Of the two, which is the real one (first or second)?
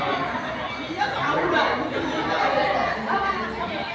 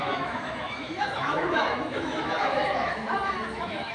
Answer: first